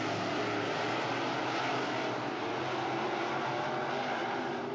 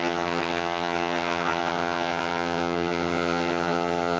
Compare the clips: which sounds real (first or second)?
first